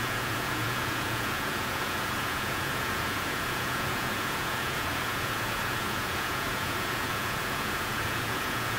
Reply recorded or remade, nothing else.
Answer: remade